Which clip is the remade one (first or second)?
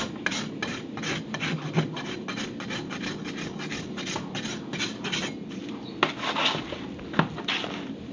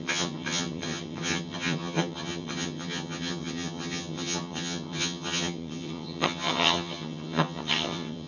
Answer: second